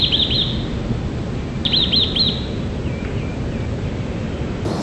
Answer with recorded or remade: recorded